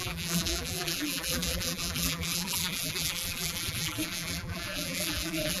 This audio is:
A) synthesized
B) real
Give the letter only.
A